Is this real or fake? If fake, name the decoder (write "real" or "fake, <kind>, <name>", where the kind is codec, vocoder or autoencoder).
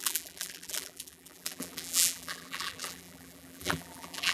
fake, vocoder, BigVGAN v2